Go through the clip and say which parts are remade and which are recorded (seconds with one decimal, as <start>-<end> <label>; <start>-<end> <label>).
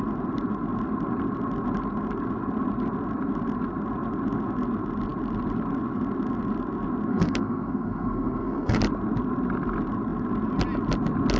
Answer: 0.0-7.1 recorded; 7.1-8.8 remade; 8.8-11.4 recorded